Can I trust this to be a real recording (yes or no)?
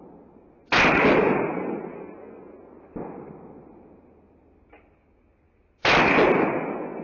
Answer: yes